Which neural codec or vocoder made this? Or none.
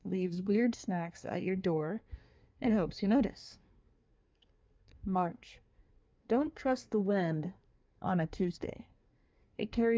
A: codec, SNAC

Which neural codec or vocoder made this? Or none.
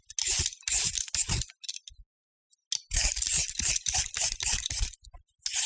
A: none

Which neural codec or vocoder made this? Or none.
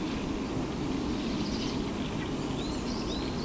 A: none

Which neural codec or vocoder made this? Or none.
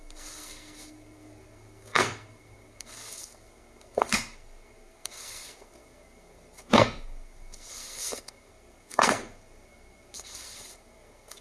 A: codec, SNAC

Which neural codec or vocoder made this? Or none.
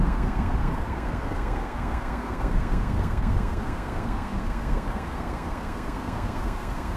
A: codec, SNAC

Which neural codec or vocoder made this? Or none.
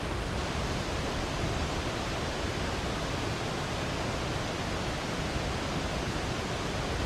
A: none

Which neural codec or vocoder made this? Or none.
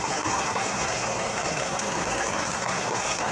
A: codec, SNAC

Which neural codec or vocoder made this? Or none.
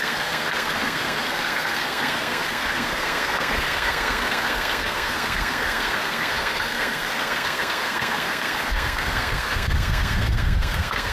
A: codec, SNAC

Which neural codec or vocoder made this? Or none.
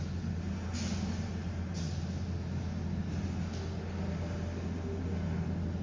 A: none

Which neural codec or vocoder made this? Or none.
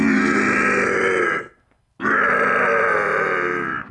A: none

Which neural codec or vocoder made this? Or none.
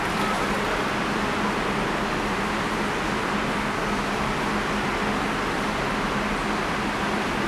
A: none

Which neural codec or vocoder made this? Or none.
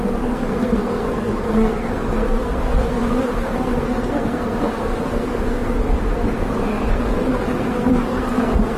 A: codec, SNAC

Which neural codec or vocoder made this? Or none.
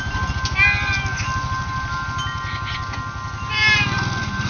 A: none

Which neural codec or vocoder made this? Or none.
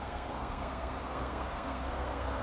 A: codec, SNAC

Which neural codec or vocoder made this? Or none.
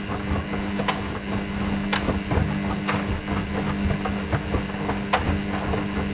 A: none